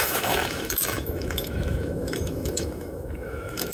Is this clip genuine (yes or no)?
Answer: no